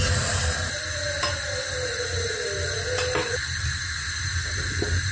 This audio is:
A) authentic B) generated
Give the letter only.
A